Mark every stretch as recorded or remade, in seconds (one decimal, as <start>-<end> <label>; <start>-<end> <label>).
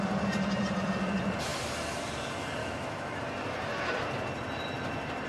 0.0-2.6 recorded; 2.6-3.2 remade; 3.2-5.3 recorded